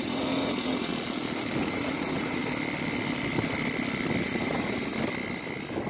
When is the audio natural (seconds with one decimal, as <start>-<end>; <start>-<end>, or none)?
0.9-1.6; 2.4-4.2; 4.9-5.9